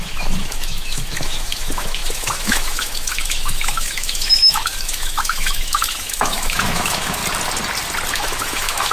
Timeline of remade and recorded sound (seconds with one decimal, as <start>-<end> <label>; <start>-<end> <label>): 0.0-7.2 remade; 7.2-8.1 recorded; 8.1-8.9 remade